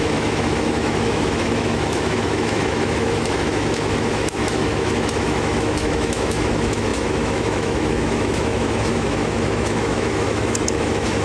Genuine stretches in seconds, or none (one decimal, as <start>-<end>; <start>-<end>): none